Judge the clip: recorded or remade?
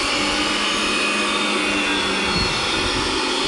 recorded